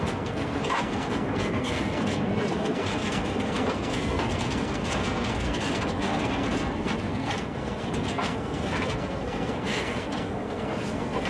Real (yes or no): no